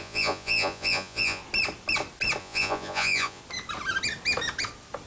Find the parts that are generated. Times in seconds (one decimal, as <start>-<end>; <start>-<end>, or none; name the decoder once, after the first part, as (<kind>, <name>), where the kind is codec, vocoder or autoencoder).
0.0-1.4 (vocoder, Vocos); 2.4-3.4